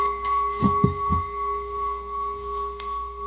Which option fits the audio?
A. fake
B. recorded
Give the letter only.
A